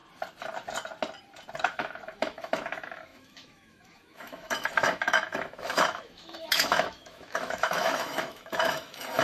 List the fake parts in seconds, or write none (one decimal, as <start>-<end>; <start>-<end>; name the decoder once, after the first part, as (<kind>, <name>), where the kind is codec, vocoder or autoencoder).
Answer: 1.6-9.2 (autoencoder, DAC-VAE)